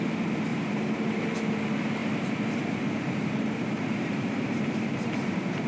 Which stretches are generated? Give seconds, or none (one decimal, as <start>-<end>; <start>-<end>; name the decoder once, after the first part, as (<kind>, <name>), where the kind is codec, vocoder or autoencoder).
0.5-1.3 (vocoder, BigVGAN v2); 2.0-5.7